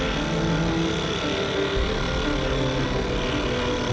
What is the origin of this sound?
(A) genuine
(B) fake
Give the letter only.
A